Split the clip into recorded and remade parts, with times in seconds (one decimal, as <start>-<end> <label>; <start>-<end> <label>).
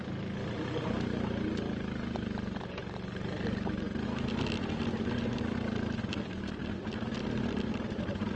0.0-8.4 recorded